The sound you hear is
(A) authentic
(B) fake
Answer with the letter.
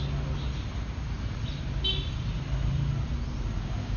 A